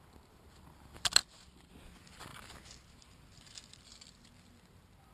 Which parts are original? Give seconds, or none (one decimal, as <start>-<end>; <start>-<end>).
0.0-5.1